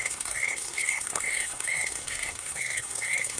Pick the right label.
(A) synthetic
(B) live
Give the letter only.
A